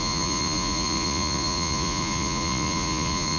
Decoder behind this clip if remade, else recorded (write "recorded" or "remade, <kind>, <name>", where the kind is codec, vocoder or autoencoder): remade, vocoder, Vocos